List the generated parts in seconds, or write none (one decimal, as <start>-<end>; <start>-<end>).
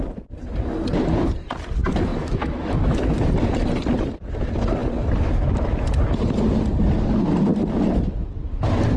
2.1-3.3